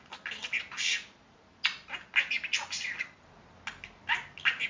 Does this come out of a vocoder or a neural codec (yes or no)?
no